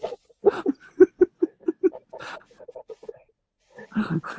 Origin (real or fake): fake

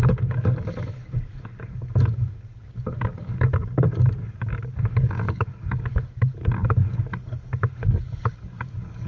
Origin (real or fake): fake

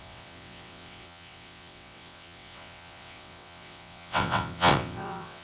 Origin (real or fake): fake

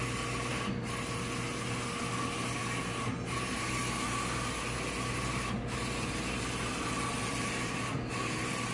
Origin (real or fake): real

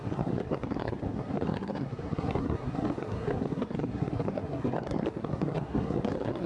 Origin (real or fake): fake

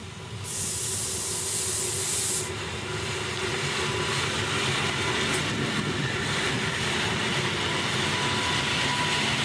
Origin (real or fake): real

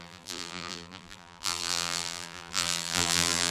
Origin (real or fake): fake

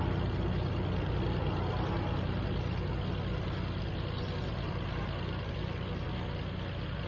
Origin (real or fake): real